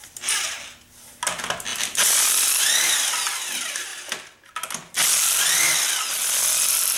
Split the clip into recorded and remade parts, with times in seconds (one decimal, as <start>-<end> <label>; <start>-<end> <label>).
0.0-1.7 recorded; 1.7-3.1 remade; 3.1-7.0 recorded